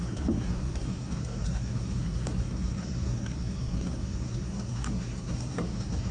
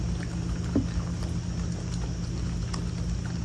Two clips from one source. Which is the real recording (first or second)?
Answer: second